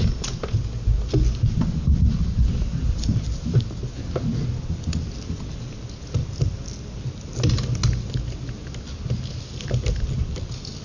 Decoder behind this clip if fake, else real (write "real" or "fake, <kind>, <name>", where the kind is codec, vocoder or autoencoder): real